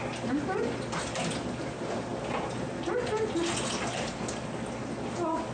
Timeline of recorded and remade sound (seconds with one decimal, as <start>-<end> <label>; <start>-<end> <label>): 0.0-5.5 recorded